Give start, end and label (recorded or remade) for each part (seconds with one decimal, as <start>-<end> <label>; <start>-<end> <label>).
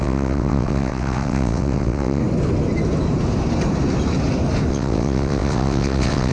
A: 0.0-2.2 remade; 2.2-4.7 recorded; 4.7-6.3 remade